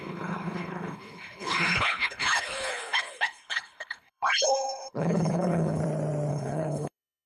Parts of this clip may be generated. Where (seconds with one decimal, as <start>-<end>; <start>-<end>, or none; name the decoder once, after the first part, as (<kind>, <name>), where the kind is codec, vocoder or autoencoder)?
0.0-5.8 (codec, HILCodec); 6.3-7.3